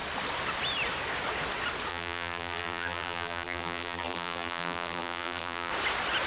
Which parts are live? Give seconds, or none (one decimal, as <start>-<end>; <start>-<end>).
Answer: 0.0-1.9; 5.7-6.3